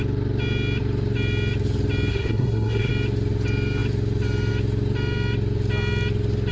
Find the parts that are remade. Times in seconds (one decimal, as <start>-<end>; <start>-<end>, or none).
2.1-2.9